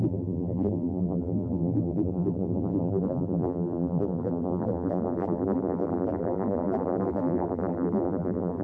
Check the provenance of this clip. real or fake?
fake